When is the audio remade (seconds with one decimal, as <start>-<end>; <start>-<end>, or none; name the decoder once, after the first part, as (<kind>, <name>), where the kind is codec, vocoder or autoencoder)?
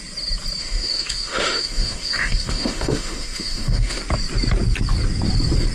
0.6-4.0 (autoencoder, DAC-VAE)